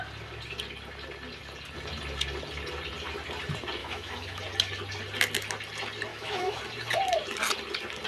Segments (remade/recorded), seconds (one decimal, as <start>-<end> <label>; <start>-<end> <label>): 0.0-3.8 recorded; 3.8-4.4 remade; 4.4-6.1 recorded; 6.1-6.6 remade; 6.6-8.1 recorded